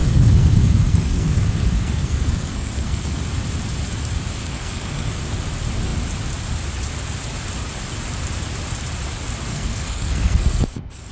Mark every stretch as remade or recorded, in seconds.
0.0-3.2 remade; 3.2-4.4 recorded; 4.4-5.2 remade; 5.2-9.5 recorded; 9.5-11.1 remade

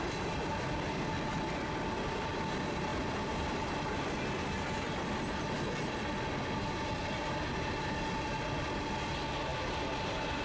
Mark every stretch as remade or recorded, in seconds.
0.0-10.4 recorded